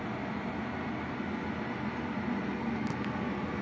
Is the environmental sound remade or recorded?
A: recorded